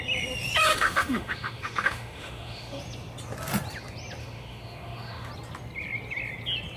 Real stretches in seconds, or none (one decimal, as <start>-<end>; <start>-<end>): 0.0-0.7; 2.8-4.2; 5.3-6.8